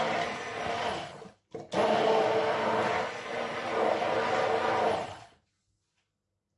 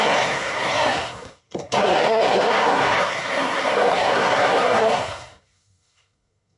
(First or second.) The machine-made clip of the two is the second